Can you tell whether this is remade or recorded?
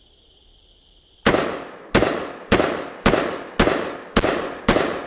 recorded